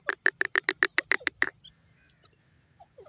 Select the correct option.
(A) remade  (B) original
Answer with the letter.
B